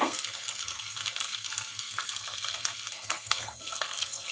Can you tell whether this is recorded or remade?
remade